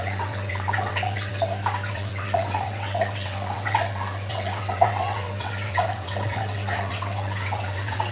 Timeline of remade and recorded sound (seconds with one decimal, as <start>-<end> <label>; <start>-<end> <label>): 0.0-1.3 remade; 1.3-1.9 recorded; 1.9-8.1 remade